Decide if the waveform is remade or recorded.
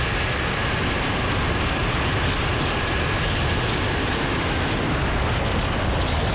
recorded